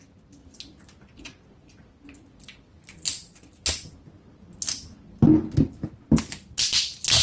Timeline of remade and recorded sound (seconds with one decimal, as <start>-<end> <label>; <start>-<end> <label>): 0.0-7.2 recorded